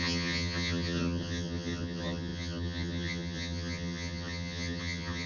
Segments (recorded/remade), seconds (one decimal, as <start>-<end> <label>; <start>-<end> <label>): 0.0-5.3 remade